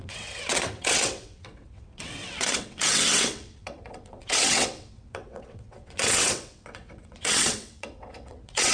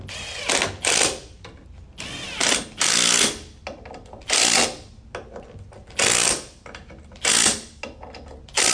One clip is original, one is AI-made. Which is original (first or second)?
second